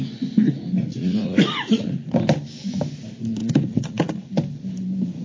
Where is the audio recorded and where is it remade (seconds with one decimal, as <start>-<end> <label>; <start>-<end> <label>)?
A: 0.0-0.9 recorded; 0.9-1.9 remade; 1.9-3.4 recorded; 3.4-4.1 remade; 4.1-5.2 recorded